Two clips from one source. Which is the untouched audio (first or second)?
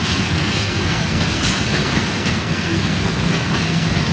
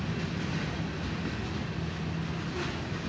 second